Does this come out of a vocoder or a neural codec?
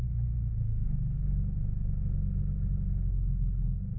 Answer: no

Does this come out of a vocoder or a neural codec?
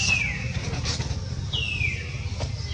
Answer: no